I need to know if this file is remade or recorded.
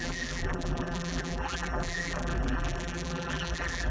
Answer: remade